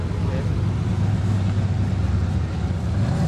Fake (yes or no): no